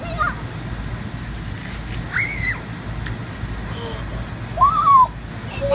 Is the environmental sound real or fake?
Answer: real